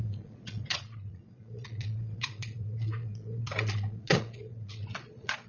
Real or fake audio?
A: fake